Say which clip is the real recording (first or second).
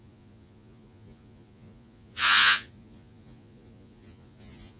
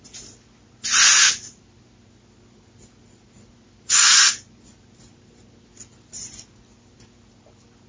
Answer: second